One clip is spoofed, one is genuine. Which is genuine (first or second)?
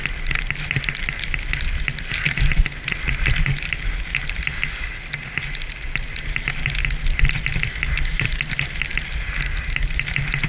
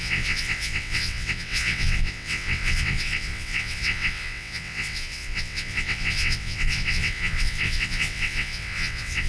first